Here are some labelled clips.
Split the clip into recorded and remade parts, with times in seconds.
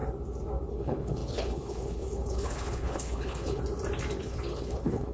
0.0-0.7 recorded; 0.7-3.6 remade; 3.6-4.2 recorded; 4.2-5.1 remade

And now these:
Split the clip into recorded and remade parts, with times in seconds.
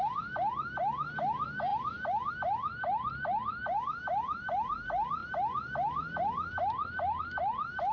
0.0-7.9 recorded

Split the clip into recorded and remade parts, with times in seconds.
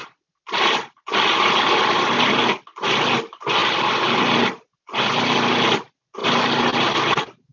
0.0-7.5 recorded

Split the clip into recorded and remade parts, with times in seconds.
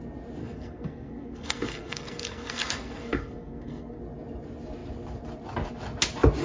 0.0-0.4 recorded; 0.4-4.0 remade; 4.0-6.4 recorded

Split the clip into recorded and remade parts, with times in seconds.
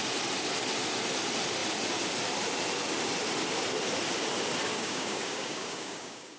0.0-4.7 recorded; 4.7-6.4 remade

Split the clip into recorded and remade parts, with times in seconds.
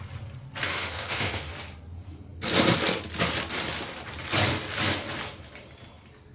0.0-0.7 recorded; 0.7-1.5 remade; 1.5-6.3 recorded